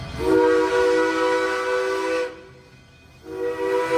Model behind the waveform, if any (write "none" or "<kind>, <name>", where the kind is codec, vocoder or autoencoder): none